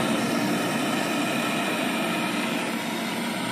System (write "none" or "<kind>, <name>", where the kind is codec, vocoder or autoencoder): none